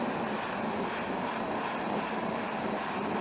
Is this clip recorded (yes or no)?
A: yes